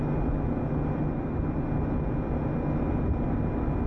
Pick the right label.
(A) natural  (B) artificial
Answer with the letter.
A